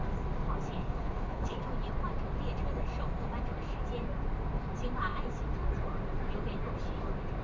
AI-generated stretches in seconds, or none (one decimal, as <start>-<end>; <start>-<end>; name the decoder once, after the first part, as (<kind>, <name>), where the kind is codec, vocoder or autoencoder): 0.8-1.6 (codec, HILCodec)